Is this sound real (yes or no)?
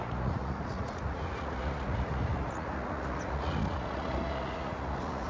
no